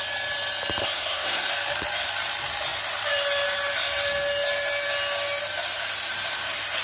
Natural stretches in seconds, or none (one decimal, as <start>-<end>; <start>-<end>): 0.0-0.8; 1.5-6.8